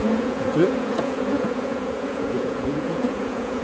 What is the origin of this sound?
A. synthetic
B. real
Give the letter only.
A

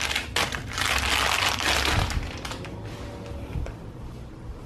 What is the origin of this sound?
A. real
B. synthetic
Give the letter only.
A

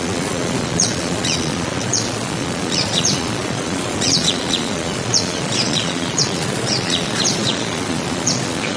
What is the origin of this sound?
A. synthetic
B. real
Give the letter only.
A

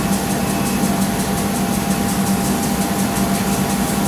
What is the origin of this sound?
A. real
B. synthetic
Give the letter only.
A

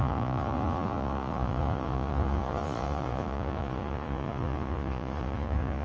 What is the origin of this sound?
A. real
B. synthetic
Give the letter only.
B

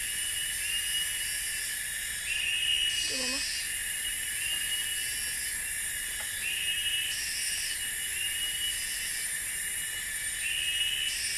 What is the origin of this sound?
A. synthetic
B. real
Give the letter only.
B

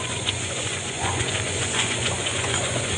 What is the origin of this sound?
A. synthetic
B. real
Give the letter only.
A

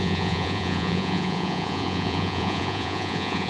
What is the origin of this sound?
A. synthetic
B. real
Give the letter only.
A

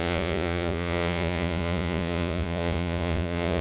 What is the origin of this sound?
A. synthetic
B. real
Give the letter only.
A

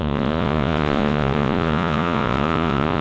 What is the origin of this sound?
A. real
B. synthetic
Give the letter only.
B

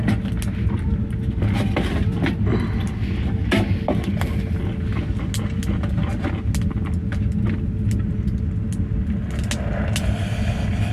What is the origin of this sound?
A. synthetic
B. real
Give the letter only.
B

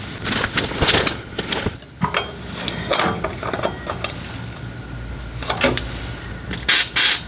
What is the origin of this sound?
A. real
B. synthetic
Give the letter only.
A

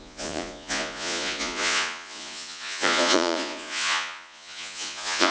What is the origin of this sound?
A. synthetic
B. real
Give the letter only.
A